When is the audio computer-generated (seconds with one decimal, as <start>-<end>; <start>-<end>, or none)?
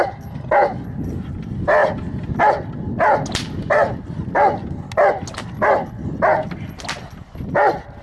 none